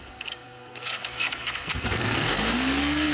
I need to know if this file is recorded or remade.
remade